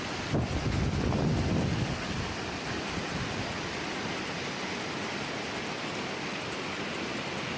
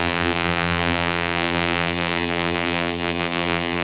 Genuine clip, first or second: first